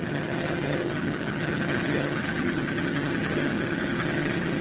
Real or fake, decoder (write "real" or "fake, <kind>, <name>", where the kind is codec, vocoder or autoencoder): fake, vocoder, HiFi-GAN